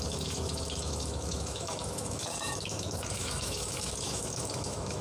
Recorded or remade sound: remade